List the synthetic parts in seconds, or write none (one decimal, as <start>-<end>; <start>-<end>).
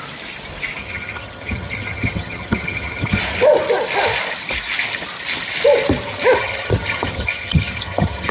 0.8-3.2; 6.4-8.3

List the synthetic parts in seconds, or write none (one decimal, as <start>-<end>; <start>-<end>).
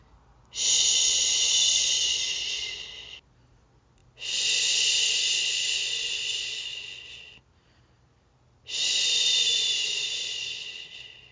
none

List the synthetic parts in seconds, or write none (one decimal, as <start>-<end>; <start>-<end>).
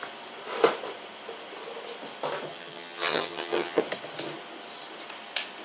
2.5-3.8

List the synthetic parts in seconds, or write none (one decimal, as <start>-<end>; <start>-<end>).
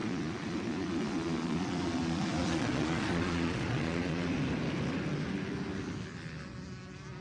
0.0-4.3